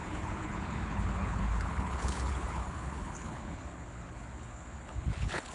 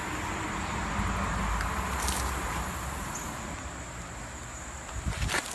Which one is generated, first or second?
first